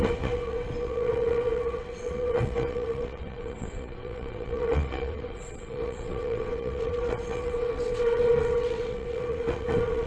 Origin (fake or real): fake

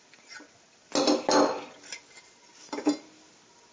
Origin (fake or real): real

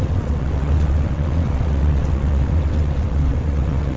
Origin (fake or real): fake